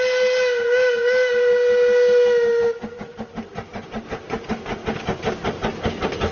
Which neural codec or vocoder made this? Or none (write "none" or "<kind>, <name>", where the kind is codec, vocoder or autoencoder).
none